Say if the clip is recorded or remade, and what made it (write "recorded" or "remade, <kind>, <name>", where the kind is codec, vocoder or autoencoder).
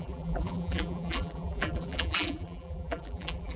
remade, vocoder, BigVGAN v2